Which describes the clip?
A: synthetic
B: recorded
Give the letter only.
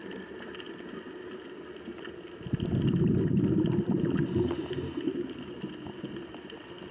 B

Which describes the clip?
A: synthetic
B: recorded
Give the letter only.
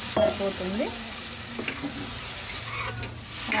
B